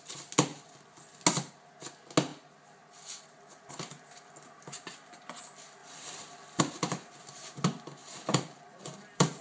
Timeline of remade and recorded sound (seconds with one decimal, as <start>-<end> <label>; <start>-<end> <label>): 0.0-5.8 recorded; 5.8-6.6 remade; 6.6-8.0 recorded; 8.0-9.4 remade